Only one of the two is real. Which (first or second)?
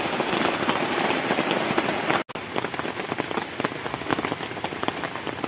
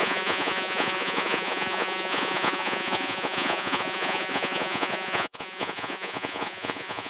first